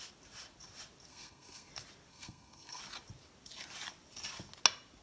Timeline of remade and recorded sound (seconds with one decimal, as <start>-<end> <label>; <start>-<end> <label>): 0.0-1.1 recorded; 1.1-1.7 remade; 1.7-2.1 recorded; 2.1-2.8 remade; 2.8-5.0 recorded